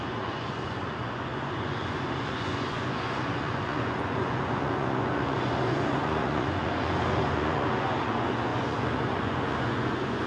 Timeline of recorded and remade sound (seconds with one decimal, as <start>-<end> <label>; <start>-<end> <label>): 0.0-10.3 remade